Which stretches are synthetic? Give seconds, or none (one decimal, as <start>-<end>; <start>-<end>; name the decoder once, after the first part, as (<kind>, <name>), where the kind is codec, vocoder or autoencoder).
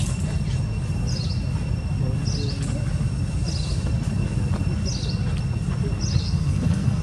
6.2-7.0 (codec, SNAC)